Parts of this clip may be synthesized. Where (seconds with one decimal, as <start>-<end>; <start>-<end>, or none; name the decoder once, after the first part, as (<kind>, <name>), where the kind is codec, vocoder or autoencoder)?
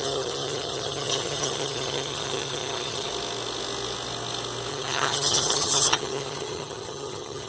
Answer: 0.0-3.1 (vocoder, HiFi-GAN); 4.7-7.5